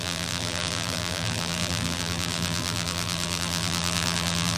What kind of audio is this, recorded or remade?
remade